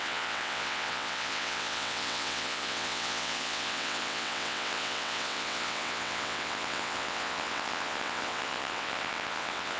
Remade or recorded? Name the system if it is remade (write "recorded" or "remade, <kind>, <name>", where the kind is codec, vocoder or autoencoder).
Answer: remade, vocoder, WaveNeXt